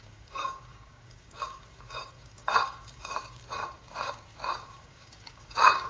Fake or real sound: fake